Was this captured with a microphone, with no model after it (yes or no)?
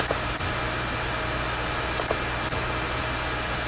yes